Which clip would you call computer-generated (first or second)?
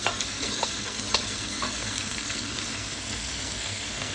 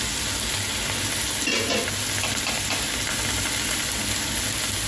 first